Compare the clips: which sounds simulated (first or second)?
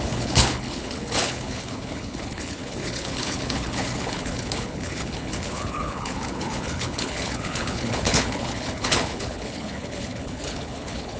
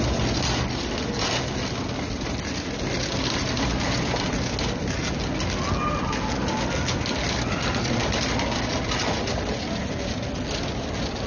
first